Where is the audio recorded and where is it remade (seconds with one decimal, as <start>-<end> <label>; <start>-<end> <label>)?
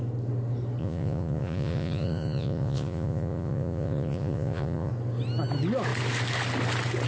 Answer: 0.0-0.8 recorded; 0.8-4.9 remade; 4.9-7.1 recorded